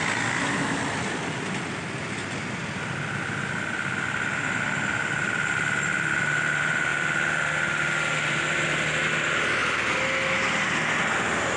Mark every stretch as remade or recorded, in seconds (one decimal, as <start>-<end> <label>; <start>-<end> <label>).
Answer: 0.0-2.2 remade; 2.2-4.8 recorded; 4.8-6.9 remade; 6.9-8.8 recorded; 8.8-9.6 remade; 9.6-11.0 recorded; 11.0-11.6 remade